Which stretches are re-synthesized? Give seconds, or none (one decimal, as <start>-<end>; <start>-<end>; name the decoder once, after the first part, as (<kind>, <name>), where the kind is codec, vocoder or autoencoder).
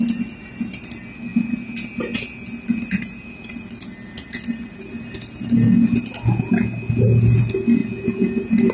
none